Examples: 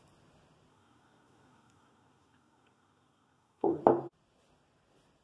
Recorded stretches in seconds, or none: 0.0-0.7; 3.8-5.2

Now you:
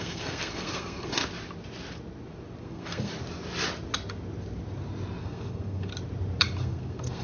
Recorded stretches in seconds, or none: 1.2-2.6; 3.1-5.2; 5.9-6.6

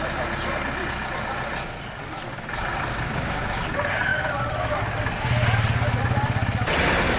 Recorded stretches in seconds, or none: 0.0-2.7; 3.6-7.2